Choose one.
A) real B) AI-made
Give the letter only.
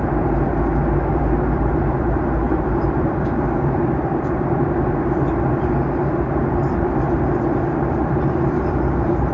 B